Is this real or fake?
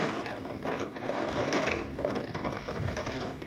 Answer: fake